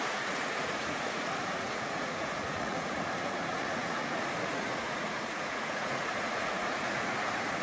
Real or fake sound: fake